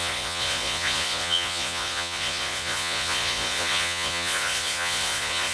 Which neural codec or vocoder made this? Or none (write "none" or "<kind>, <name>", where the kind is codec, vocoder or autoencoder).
vocoder, Vocos